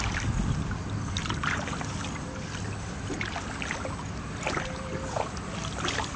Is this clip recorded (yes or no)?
yes